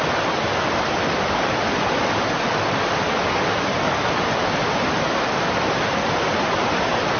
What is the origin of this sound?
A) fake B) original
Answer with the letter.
B